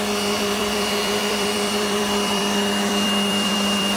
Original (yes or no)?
no